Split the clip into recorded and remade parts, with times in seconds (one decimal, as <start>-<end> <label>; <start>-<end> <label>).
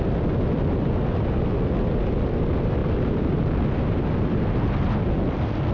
0.0-5.7 recorded